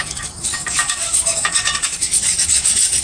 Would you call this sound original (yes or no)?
no